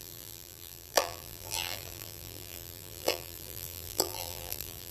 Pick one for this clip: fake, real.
fake